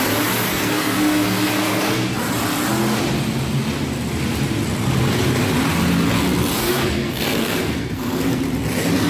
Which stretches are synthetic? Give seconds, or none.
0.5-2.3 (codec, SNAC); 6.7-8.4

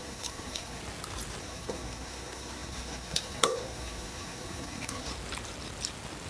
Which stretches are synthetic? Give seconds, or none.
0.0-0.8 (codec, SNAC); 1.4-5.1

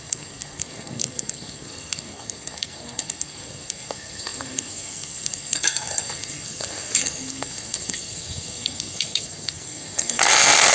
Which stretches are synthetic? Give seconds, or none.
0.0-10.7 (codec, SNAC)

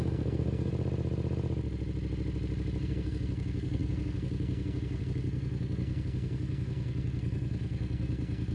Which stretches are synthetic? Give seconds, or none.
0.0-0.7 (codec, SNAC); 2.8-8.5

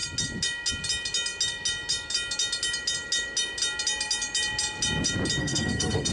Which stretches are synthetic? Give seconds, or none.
5.4-6.1 (codec, SNAC)